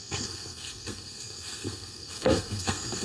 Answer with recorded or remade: remade